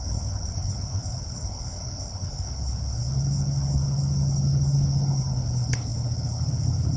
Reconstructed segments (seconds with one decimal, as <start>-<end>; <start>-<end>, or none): 0.0-7.0